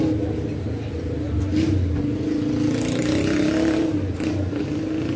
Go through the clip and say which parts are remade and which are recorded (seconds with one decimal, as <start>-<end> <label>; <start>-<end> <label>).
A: 0.0-5.2 recorded